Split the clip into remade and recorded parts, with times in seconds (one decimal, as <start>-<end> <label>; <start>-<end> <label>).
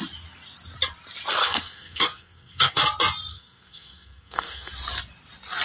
0.0-1.4 recorded; 1.4-2.8 remade; 2.8-3.3 recorded; 3.3-4.7 remade; 4.7-5.6 recorded